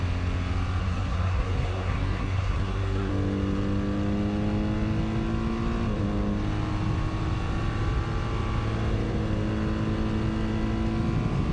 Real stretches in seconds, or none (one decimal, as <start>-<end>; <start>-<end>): 0.0-0.8; 3.1-11.5